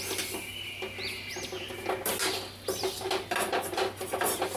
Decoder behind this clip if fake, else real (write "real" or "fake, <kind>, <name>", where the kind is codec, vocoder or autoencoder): real